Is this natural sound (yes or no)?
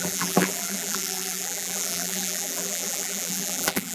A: no